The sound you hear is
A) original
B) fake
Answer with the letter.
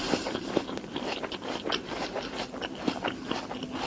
A